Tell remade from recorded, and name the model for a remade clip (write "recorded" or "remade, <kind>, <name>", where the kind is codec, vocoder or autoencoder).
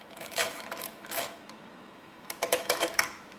remade, autoencoder, DAC-VAE